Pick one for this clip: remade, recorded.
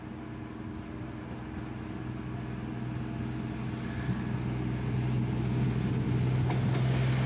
recorded